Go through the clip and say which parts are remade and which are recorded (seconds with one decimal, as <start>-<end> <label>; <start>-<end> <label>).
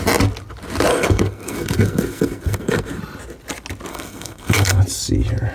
0.0-0.9 recorded; 0.9-3.0 remade; 3.0-3.9 recorded; 3.9-4.8 remade; 4.8-5.5 recorded